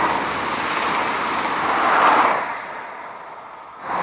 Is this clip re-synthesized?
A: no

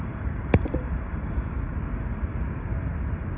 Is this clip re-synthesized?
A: yes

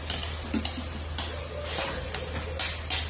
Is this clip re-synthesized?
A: no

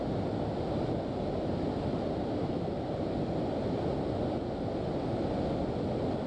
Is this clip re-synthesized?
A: no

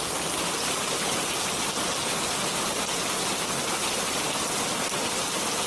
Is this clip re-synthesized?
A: no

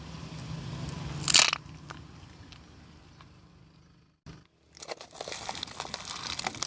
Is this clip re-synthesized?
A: no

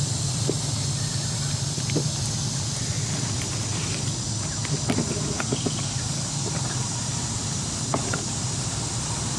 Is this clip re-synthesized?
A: yes